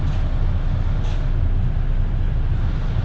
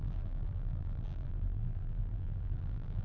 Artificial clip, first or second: second